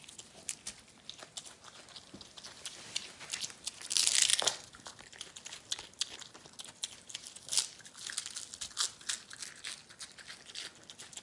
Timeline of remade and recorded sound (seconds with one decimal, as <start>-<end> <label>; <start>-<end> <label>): 0.0-11.2 recorded